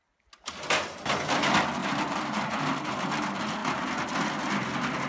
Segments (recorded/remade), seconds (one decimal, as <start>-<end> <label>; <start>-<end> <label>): 0.0-1.8 recorded; 1.8-2.9 remade; 2.9-5.1 recorded